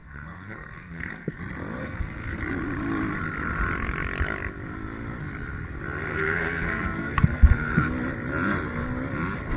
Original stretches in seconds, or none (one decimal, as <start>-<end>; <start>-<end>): 1.4-1.8; 2.4-6.1; 7.9-9.6